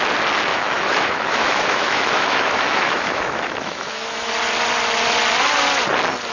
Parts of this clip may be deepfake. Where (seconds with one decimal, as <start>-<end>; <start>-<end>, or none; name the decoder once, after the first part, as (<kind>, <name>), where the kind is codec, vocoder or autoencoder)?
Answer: 0.5-4.3 (autoencoder, DAC-VAE)